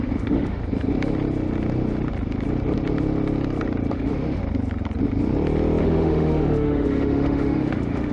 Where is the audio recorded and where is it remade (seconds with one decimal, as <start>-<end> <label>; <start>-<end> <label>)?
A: 0.0-0.6 remade; 0.6-3.9 recorded; 3.9-4.4 remade; 4.4-5.8 recorded; 5.8-8.1 remade